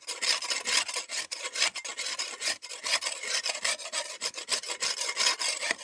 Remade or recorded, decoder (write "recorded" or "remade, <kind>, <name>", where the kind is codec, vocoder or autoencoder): recorded